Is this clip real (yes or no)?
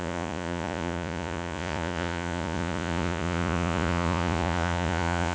no